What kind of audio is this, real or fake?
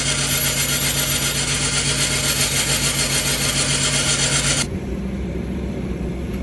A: real